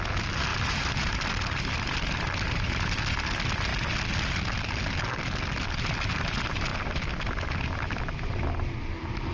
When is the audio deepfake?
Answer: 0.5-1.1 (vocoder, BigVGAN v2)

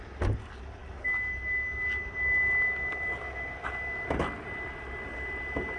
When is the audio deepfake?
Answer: none

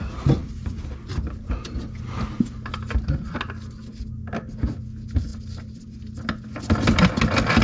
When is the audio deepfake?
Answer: none